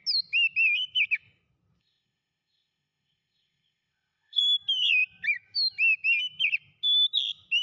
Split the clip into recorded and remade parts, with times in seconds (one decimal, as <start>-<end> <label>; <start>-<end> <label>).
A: 0.0-1.8 recorded; 1.8-4.4 remade; 4.4-7.6 recorded